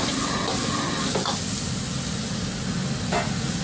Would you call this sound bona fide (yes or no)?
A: yes